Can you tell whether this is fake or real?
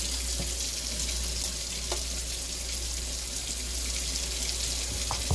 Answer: real